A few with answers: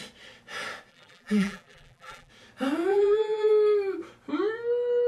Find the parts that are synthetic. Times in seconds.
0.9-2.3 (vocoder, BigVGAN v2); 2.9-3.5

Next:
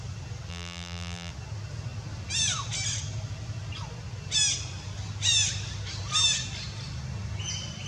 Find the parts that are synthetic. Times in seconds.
0.5-1.3 (vocoder, BigVGAN v2)

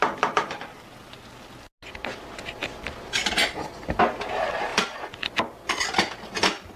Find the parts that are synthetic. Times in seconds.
0.0-1.5 (vocoder, BigVGAN v2); 4.7-5.3

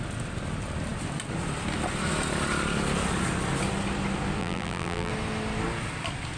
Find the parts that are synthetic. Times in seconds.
4.4-5.1 (vocoder, BigVGAN v2)

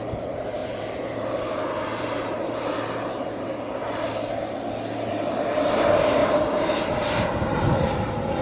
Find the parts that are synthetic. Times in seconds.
0.0-3.8 (vocoder, BigVGAN v2); 5.1-6.2

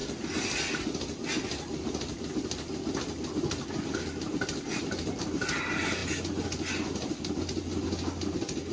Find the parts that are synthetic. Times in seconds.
none

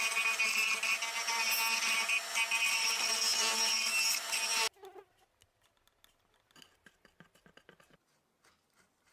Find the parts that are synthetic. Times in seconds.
none